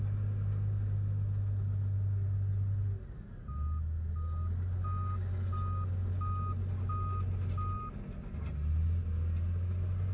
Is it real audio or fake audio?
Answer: real